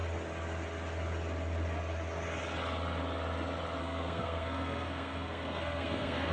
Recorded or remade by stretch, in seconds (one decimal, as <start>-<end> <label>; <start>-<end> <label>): 0.0-3.8 recorded; 3.8-6.3 remade